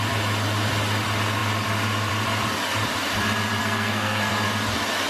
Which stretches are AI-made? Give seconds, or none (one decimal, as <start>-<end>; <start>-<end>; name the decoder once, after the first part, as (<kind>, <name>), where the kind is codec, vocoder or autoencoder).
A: 3.6-4.3 (codec, SNAC)